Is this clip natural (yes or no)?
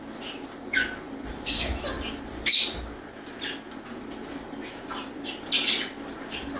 yes